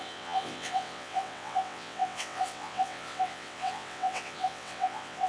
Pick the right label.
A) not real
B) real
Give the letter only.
A